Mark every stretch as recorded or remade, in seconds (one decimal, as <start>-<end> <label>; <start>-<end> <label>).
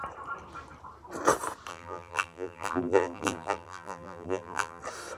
0.0-1.7 recorded; 1.7-4.8 remade; 4.8-5.2 recorded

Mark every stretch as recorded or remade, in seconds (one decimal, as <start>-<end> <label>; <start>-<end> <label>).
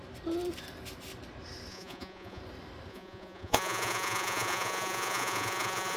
0.0-1.7 recorded; 1.7-2.4 remade; 2.4-2.9 recorded; 2.9-6.0 remade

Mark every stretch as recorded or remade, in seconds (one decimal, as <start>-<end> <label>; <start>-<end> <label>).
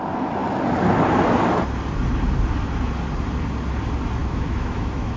0.0-4.2 recorded; 4.2-5.2 remade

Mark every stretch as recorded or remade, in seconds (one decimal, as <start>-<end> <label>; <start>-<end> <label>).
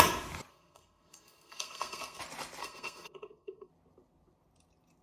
0.0-0.5 recorded; 0.5-2.2 remade; 2.2-2.6 recorded; 2.6-3.7 remade; 3.7-5.0 recorded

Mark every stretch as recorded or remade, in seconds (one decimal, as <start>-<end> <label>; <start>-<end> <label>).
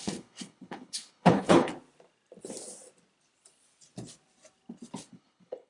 0.0-1.7 remade; 1.7-5.1 recorded; 5.1-5.7 remade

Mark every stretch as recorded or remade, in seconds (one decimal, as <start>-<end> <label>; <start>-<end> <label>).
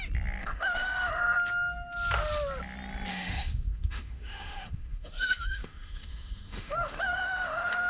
0.0-0.4 recorded; 0.4-1.1 remade; 1.1-3.1 recorded; 3.1-7.9 remade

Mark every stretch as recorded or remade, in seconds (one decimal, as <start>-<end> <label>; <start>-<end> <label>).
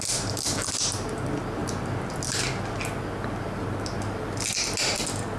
0.0-5.4 recorded